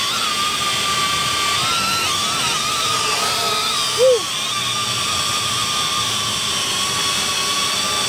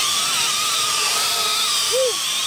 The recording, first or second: first